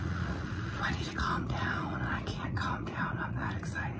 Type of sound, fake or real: fake